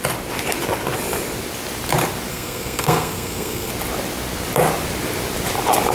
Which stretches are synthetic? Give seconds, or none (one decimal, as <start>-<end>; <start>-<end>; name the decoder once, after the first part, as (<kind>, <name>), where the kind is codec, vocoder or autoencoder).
2.3-3.7 (codec, SNAC)